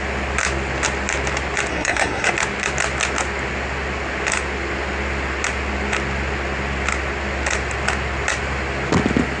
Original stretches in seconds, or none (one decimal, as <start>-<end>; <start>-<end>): 0.0-1.7; 2.3-9.4